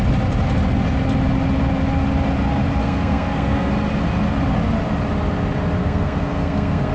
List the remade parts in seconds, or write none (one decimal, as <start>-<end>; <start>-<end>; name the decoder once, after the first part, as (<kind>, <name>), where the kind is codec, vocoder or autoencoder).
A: 2.8-3.7 (codec, SNAC); 5.8-6.9

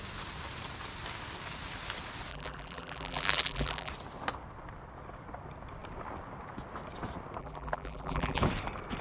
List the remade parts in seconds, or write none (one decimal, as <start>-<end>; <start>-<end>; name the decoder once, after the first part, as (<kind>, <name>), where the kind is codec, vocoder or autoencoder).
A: 2.3-3.9 (vocoder, BigVGAN v2); 7.4-8.4

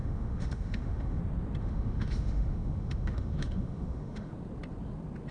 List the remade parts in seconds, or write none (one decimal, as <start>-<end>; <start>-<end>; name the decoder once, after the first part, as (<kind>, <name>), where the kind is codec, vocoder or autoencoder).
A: 0.0-1.2 (autoencoder, DAC-VAE); 1.6-4.3

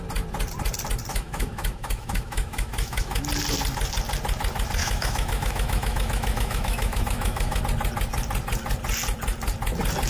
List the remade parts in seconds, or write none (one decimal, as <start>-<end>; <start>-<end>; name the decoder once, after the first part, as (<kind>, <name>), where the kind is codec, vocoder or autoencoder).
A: 1.1-3.2 (autoencoder, DAC-VAE); 4.8-7.6